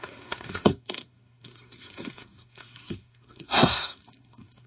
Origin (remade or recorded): remade